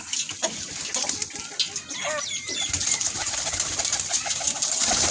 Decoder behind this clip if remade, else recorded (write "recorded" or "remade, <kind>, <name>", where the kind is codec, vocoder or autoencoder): recorded